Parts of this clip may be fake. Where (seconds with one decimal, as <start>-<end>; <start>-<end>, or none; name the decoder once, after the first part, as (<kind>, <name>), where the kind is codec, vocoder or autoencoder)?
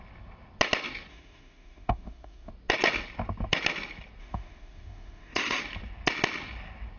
1.1-2.5 (autoencoder, DAC-VAE); 4.2-5.6